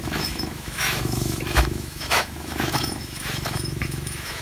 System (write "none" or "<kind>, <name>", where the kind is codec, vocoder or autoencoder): autoencoder, DAC-VAE